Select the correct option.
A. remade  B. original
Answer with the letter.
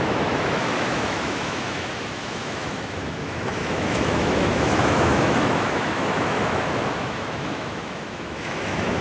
A